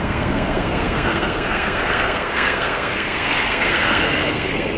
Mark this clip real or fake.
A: fake